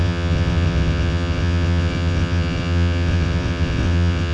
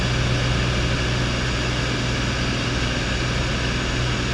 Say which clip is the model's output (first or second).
first